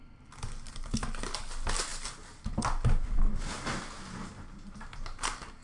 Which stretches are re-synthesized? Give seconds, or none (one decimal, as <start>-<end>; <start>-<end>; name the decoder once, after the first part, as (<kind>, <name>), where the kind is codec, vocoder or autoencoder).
none